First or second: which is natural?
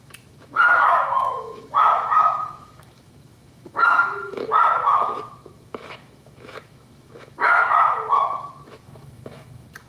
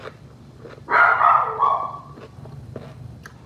second